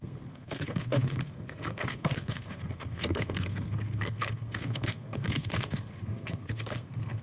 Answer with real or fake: fake